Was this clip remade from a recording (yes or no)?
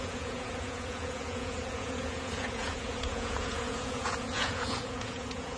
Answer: yes